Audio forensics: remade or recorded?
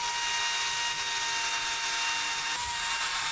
recorded